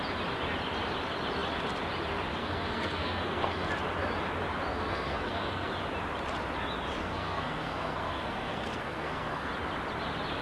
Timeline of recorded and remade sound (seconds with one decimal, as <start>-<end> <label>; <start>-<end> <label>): 0.0-2.4 recorded; 2.4-3.7 remade; 3.7-4.7 recorded; 4.7-5.7 remade; 5.7-7.0 recorded; 7.0-9.5 remade; 9.5-10.4 recorded